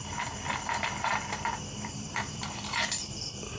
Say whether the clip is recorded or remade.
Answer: remade